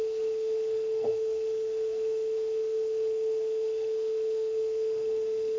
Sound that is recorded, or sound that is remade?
remade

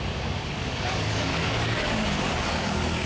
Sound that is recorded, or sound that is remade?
remade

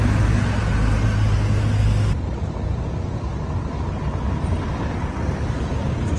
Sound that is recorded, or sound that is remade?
recorded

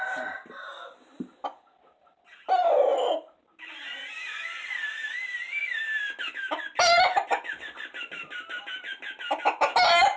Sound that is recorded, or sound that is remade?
recorded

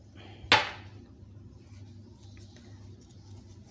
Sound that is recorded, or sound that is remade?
recorded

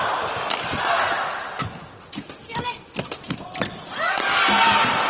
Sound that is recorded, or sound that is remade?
remade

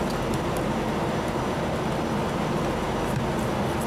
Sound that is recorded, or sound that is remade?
recorded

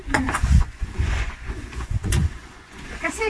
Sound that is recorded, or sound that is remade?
remade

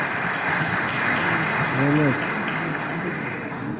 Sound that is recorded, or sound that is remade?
recorded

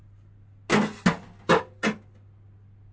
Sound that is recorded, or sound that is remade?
recorded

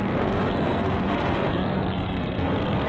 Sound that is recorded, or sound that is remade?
remade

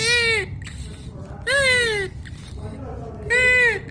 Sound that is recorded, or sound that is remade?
recorded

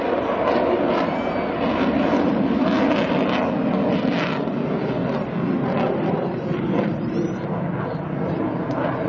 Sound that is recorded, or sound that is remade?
recorded